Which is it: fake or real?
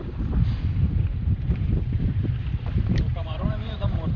fake